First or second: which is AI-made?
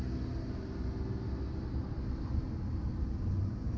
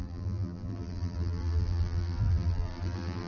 second